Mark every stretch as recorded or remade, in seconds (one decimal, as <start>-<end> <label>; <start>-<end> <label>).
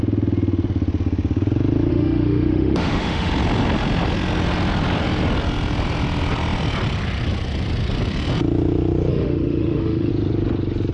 0.0-1.9 recorded; 1.9-3.3 remade; 3.3-9.1 recorded; 9.1-10.1 remade; 10.1-10.9 recorded